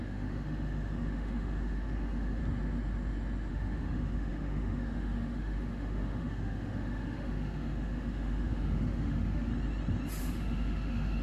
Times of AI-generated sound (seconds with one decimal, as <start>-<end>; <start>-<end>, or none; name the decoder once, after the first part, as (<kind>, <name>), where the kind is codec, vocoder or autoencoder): 0.0-2.4 (autoencoder, DAC-VAE); 3.5-9.5; 10.2-11.2